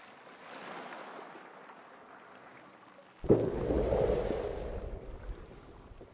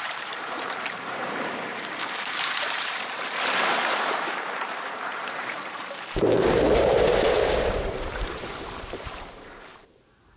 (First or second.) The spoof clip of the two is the second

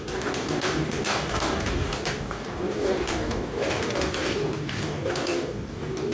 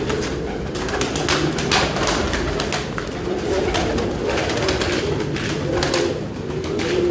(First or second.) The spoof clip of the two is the first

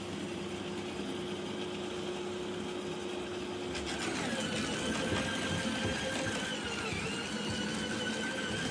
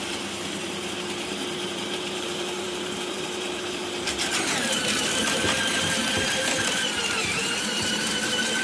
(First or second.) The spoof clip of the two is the second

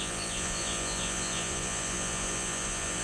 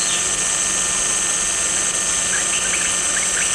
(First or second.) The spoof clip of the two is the first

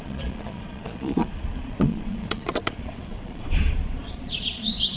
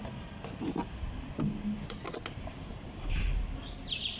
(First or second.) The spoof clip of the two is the first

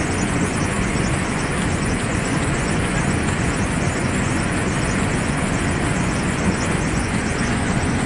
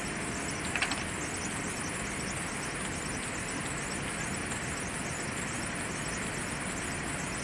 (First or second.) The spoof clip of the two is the first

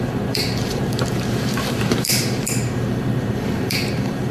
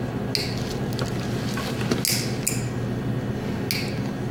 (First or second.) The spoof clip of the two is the first